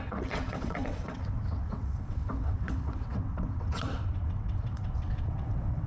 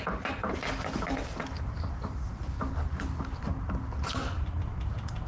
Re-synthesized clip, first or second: first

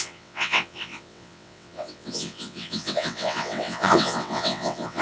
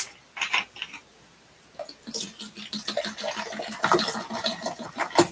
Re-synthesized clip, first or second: first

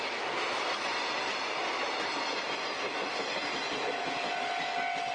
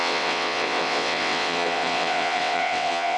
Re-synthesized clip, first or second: second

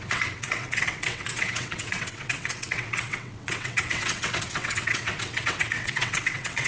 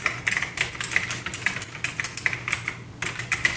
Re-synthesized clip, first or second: first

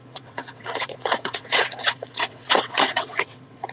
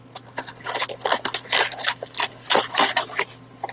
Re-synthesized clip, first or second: first